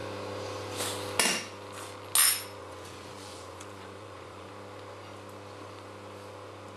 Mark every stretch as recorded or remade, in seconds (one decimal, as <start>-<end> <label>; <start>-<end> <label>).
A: 0.0-2.6 recorded; 2.6-4.5 remade; 4.5-6.8 recorded